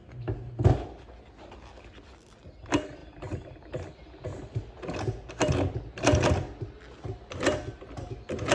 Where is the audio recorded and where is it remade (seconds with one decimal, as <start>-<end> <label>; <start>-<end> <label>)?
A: 0.0-8.5 recorded